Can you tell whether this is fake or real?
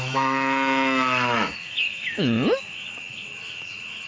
fake